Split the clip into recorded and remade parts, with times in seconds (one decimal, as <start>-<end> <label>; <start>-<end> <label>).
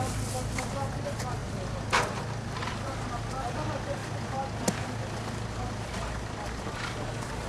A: 0.0-7.5 recorded